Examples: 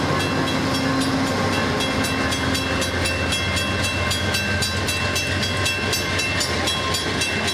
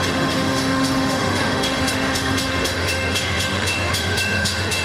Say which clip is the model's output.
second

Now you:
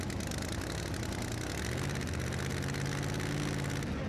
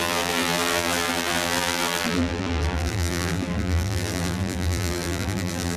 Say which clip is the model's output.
second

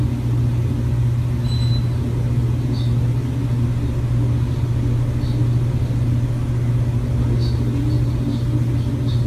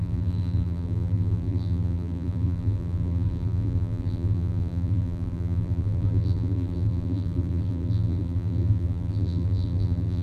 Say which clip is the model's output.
second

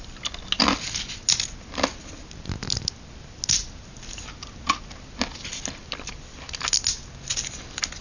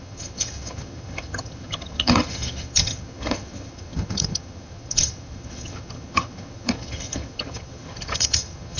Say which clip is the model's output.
second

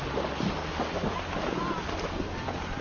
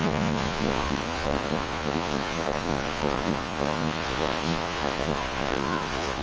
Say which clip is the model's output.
second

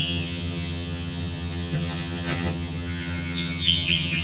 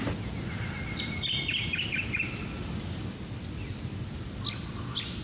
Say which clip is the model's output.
first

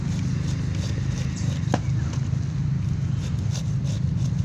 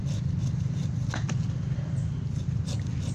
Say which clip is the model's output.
second